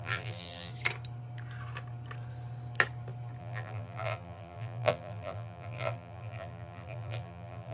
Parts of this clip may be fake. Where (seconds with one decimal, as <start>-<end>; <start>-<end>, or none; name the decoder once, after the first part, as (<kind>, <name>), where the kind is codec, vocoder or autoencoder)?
0.0-0.7 (vocoder, BigVGAN v2); 3.4-7.7